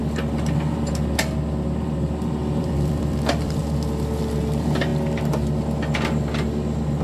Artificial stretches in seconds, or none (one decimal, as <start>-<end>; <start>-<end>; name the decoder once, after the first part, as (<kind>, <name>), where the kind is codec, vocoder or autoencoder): 2.4-3.6 (vocoder, BigVGAN v2)